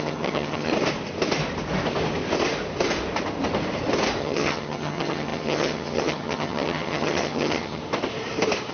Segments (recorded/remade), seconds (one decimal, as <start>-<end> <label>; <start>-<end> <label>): 0.0-0.7 remade; 0.7-4.2 recorded; 4.2-7.8 remade; 7.8-8.7 recorded